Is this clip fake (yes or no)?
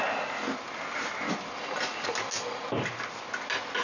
no